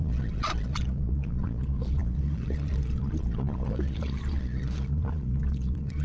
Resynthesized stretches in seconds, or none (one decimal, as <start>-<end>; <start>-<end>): 0.0-6.0